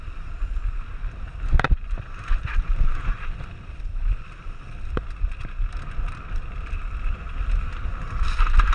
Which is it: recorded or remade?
recorded